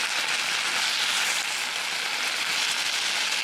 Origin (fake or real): real